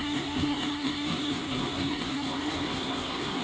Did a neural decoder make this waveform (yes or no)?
yes